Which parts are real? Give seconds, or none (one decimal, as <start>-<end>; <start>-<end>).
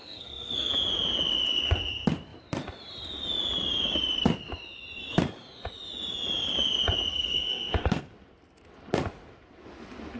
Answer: 0.7-7.1; 8.1-10.2